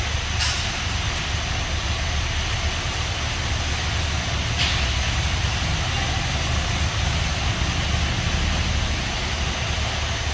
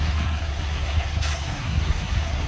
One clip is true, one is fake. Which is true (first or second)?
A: first